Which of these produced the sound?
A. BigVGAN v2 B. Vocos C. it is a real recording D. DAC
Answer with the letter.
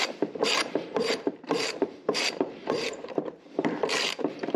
A